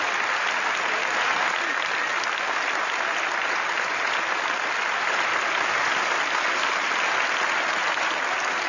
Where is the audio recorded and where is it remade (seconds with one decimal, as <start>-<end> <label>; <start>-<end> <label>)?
0.0-8.7 recorded